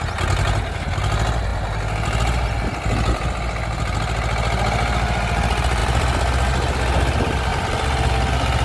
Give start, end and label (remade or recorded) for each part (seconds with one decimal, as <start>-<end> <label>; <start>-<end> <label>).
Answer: 0.0-5.8 recorded; 5.8-6.5 remade; 6.5-7.5 recorded; 7.5-8.1 remade; 8.1-8.6 recorded